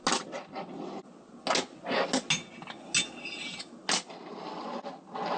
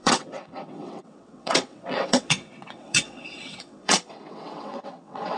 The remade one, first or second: second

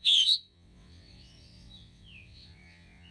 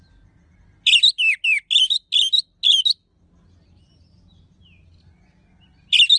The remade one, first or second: first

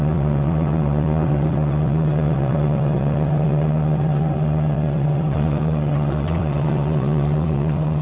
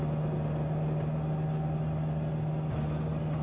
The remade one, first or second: first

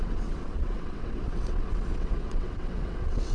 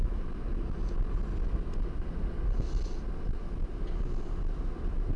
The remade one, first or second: first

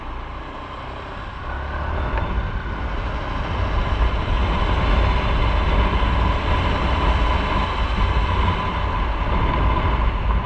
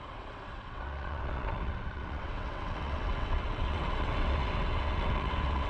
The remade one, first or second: second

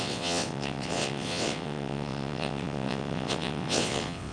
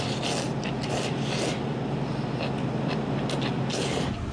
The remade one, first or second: first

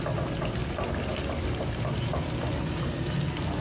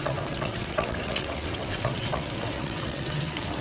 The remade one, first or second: second